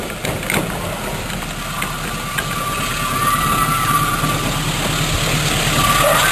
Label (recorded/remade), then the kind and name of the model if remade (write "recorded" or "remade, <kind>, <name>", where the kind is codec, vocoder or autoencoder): recorded